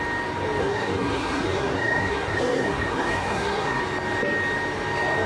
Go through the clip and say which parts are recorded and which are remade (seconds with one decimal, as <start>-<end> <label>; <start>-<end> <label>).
0.0-0.6 recorded; 0.6-3.8 remade; 3.8-5.3 recorded